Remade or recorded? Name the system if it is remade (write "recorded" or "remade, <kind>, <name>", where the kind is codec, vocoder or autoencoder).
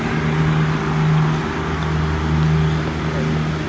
recorded